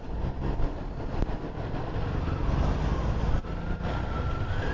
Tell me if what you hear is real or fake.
real